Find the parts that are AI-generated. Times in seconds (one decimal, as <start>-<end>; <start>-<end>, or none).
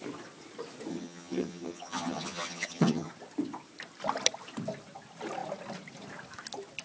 0.9-3.1